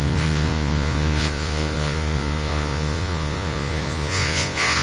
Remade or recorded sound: remade